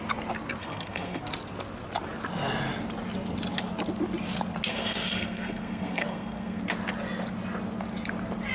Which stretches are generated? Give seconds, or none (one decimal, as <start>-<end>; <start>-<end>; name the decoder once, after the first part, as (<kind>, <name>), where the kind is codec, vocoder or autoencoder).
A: 0.6-1.2 (codec, SNAC); 4.7-6.6